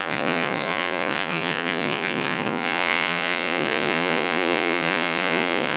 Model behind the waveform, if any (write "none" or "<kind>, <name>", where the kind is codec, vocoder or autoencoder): vocoder, Vocos